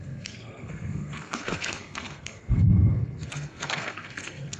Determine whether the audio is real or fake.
fake